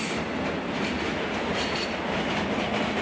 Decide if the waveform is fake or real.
real